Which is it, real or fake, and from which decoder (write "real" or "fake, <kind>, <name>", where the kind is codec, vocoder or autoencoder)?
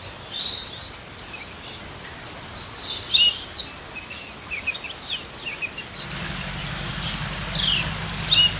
real